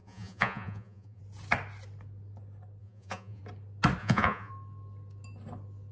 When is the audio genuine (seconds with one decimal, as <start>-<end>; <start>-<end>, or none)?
1.2-2.8; 3.4-4.0; 4.5-5.9